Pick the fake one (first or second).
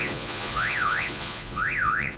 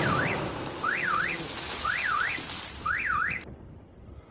first